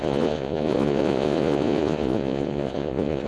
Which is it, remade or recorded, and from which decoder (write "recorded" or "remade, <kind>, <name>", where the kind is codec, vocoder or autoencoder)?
remade, vocoder, Vocos